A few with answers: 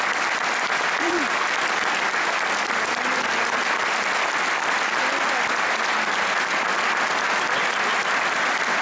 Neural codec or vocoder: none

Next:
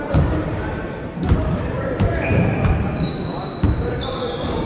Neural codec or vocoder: vocoder, BigVGAN v2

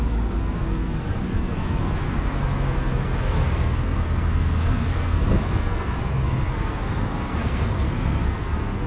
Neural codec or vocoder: codec, SNAC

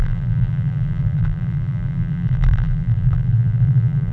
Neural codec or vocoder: vocoder, BigVGAN v2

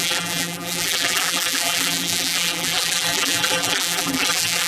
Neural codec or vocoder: vocoder, BigVGAN v2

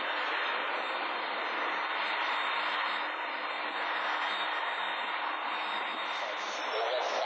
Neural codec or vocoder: none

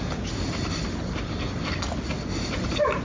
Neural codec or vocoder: none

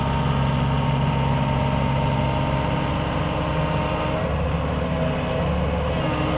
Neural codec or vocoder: none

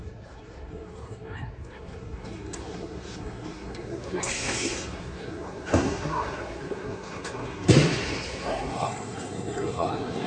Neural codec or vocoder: codec, SNAC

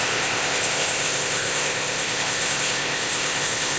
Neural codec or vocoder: codec, ZipCodec